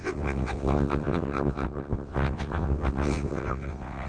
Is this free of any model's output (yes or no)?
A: no